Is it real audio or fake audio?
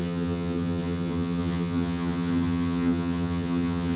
fake